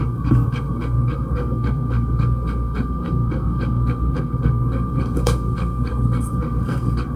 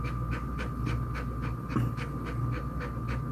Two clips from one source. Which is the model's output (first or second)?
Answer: first